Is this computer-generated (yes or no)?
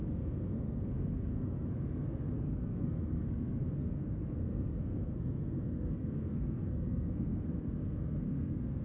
yes